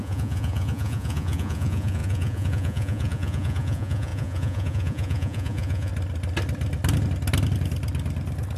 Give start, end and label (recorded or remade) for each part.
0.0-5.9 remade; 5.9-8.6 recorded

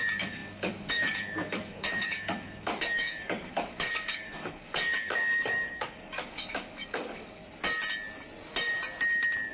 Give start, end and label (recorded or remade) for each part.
0.0-7.4 remade; 7.4-9.5 recorded